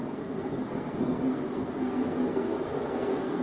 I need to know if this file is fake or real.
fake